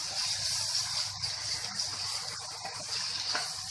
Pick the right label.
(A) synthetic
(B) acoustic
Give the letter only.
B